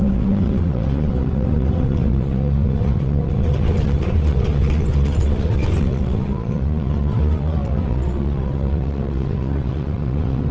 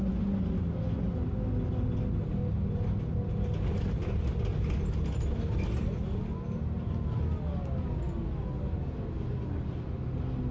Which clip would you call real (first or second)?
second